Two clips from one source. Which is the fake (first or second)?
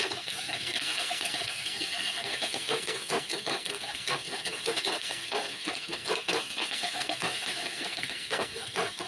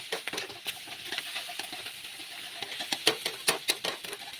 first